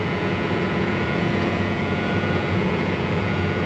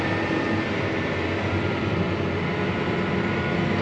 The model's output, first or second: first